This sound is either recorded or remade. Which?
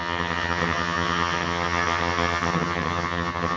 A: remade